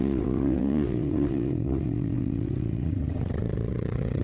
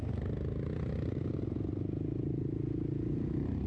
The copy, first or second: first